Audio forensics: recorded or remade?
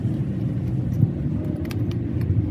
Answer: remade